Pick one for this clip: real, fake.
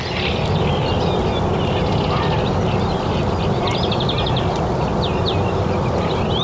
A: real